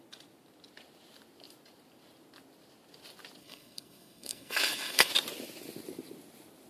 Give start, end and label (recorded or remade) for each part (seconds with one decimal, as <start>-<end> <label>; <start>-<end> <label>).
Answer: 0.0-3.4 recorded; 3.4-5.1 remade; 5.1-6.7 recorded